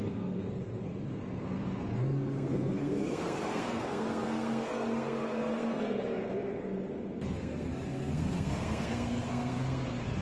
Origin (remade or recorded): remade